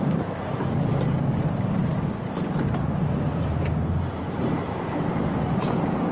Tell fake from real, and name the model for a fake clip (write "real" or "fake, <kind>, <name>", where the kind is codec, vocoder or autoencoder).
fake, vocoder, BigVGAN v2